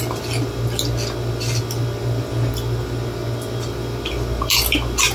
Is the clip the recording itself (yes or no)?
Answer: yes